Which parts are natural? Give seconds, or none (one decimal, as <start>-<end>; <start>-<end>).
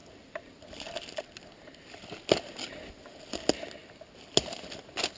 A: 0.0-5.2